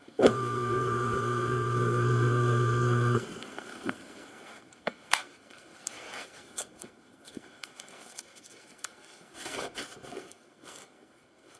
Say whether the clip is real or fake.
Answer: fake